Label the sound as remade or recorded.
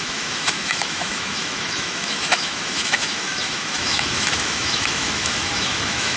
remade